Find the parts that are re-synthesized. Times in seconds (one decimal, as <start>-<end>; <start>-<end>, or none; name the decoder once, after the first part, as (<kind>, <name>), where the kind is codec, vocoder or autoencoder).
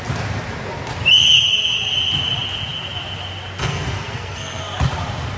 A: 3.6-4.6 (codec, SNAC)